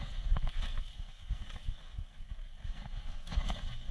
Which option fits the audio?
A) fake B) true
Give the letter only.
A